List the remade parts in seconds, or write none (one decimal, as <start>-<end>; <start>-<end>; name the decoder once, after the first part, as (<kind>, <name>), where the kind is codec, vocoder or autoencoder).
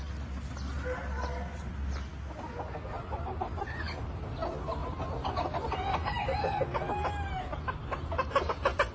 none